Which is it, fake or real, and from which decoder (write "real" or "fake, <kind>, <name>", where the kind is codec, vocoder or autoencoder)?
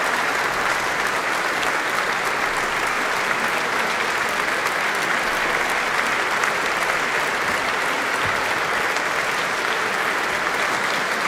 real